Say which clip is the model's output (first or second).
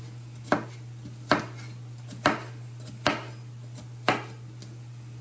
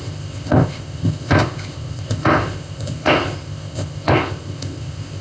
second